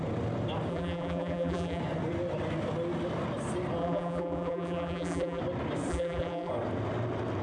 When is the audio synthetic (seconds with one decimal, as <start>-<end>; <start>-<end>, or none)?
0.7-1.8; 3.8-5.4; 5.9-6.5